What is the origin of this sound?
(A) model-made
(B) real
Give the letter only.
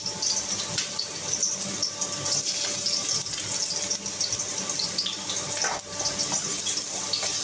B